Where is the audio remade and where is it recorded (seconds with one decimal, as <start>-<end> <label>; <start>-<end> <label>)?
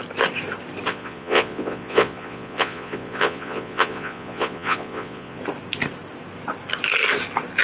0.0-0.9 recorded; 0.9-5.4 remade; 5.4-7.6 recorded